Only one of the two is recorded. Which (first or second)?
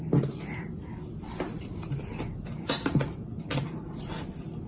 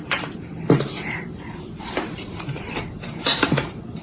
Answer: first